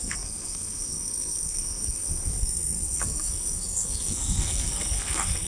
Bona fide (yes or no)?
no